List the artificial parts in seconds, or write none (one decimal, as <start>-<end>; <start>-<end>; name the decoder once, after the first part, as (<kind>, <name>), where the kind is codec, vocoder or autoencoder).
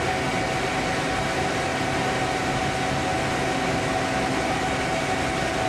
none